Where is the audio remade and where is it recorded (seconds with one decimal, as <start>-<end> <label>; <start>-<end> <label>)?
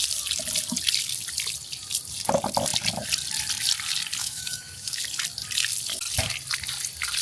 0.0-4.2 recorded; 4.2-5.0 remade; 5.0-7.2 recorded